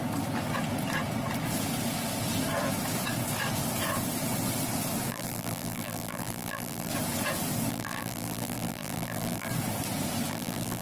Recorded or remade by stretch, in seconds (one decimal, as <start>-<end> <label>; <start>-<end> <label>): 0.0-5.1 recorded; 5.1-6.9 remade; 6.9-7.7 recorded; 7.7-9.5 remade; 9.5-10.3 recorded; 10.3-10.8 remade